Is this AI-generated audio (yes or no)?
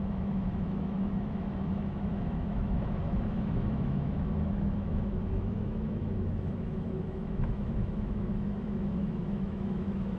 yes